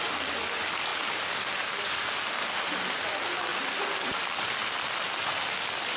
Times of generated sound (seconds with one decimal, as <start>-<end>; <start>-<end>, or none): none